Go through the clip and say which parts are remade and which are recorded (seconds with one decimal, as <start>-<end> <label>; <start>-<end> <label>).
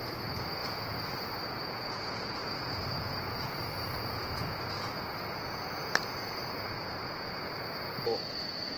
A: 0.0-8.8 remade